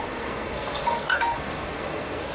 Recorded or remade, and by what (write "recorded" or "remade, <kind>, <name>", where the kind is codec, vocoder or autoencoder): remade, codec, SNAC